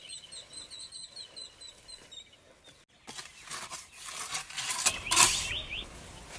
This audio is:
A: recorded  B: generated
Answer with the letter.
A